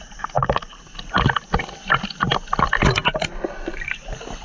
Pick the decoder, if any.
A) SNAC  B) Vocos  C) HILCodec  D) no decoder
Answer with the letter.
D